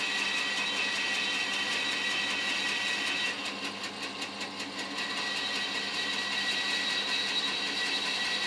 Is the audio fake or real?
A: real